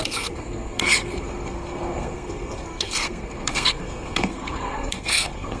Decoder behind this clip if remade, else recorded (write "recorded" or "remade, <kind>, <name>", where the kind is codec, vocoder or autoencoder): remade, codec, SNAC